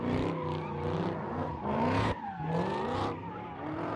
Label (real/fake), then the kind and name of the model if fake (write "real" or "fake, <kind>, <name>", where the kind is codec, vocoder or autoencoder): real